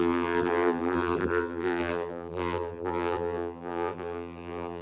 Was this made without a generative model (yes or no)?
no